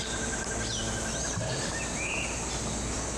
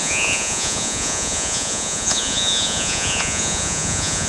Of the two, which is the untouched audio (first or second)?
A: first